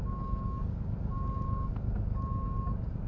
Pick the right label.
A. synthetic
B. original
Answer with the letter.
A